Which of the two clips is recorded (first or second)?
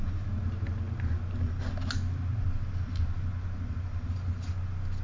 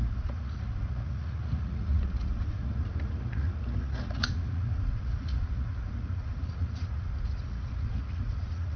first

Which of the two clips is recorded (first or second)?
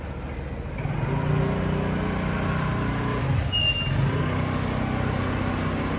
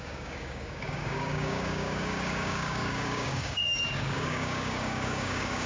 first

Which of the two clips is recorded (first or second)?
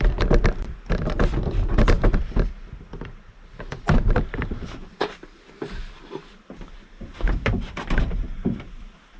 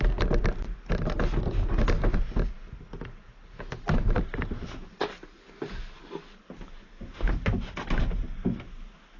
second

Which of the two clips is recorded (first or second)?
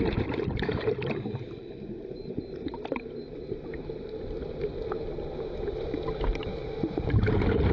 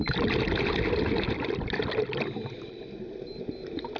second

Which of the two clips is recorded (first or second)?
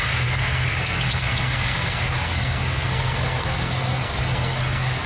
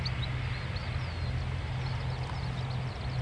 second